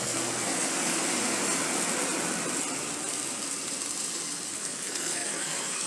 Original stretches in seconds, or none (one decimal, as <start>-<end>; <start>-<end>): 1.0-4.5